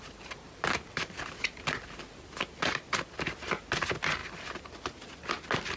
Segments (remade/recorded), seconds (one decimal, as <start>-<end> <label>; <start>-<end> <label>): 0.0-5.8 recorded